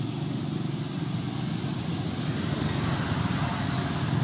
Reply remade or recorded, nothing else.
recorded